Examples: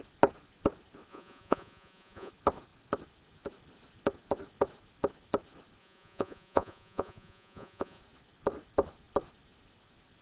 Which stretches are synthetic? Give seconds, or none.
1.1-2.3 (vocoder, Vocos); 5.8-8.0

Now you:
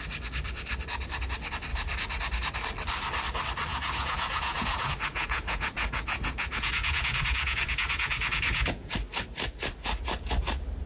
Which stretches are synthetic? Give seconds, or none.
3.7-8.9 (vocoder, Vocos)

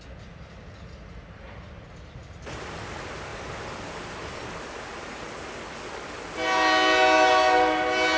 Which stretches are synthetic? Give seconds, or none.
none

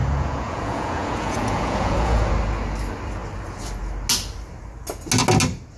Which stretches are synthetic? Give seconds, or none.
0.0-2.3 (vocoder, Vocos)